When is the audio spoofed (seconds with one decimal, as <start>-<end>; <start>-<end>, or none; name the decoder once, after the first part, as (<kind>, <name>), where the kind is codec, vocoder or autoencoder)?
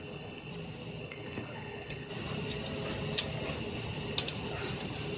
0.0-0.5 (codec, HILCodec); 1.0-2.1